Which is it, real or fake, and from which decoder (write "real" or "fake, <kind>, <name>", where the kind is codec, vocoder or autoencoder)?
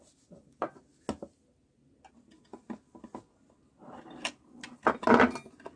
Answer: real